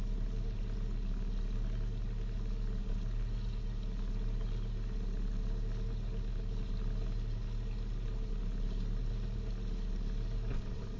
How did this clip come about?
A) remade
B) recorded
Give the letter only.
B